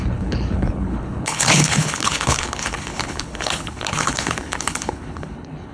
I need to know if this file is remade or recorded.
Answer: remade